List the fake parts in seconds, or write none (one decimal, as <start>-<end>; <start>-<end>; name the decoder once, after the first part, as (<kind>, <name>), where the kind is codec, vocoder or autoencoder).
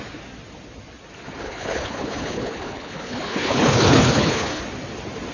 1.4-4.6 (codec, HILCodec)